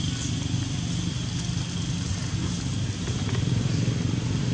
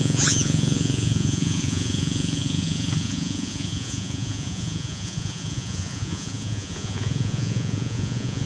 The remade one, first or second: second